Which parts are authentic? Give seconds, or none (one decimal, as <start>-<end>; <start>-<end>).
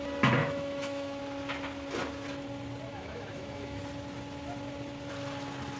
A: 0.0-0.4; 1.2-2.9; 3.8-5.8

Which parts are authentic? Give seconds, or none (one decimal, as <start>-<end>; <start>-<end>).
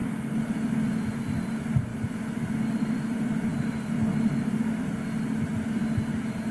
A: 0.0-6.5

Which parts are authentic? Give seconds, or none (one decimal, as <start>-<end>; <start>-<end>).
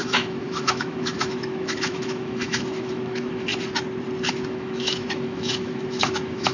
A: 3.5-4.3